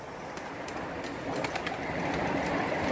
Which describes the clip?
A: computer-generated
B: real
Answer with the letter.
B